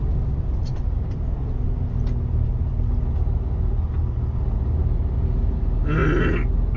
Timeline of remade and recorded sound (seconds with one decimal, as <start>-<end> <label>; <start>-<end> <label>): 0.0-6.8 recorded